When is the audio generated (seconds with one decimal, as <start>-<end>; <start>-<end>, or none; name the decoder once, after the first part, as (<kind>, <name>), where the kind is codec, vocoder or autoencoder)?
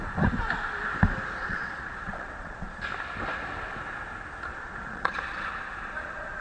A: 1.4-2.8 (vocoder, Vocos); 4.5-6.4